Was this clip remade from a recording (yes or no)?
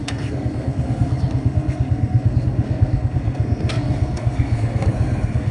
yes